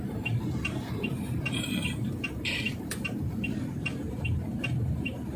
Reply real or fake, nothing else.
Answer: fake